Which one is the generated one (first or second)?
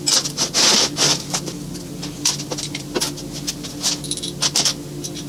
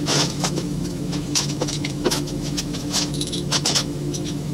second